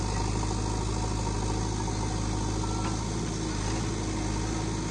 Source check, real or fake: real